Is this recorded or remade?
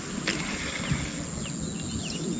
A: recorded